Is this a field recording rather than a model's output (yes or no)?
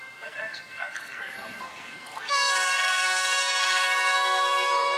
no